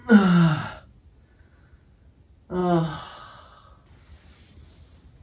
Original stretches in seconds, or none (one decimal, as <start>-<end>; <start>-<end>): 0.0-5.2